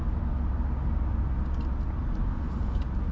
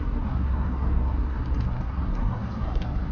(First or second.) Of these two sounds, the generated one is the second